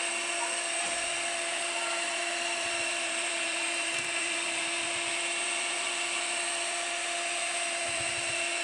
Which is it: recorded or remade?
remade